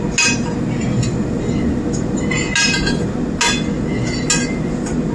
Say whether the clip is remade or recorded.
recorded